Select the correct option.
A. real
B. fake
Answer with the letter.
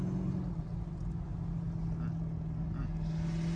A